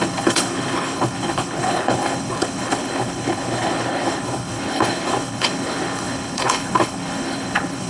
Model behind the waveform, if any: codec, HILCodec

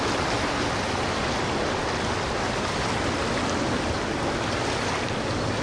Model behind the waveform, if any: none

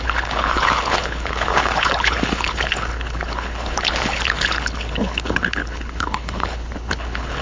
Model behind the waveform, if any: codec, HILCodec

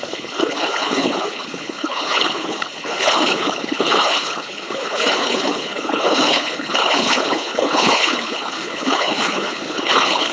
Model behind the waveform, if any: codec, HILCodec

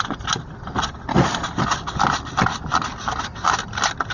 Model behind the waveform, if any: none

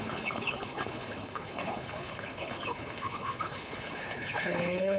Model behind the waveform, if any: codec, HILCodec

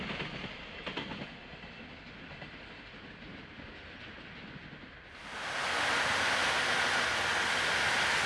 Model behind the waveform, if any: none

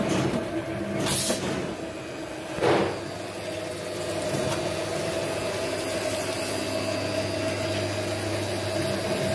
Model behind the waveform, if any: none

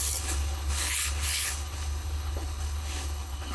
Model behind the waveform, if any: codec, HILCodec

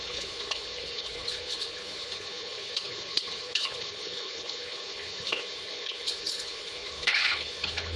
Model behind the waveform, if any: codec, HILCodec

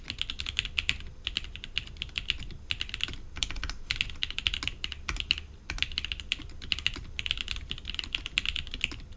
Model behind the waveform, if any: none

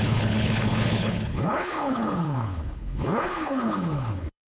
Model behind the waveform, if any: codec, HILCodec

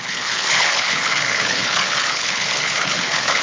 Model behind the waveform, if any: codec, HILCodec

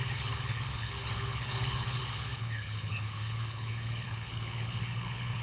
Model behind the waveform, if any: codec, HILCodec